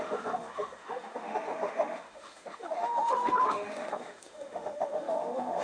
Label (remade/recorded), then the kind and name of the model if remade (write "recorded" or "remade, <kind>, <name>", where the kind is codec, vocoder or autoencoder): remade, autoencoder, DAC-VAE